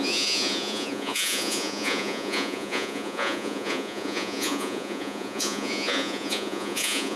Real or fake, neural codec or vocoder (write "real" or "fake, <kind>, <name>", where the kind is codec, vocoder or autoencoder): fake, vocoder, Vocos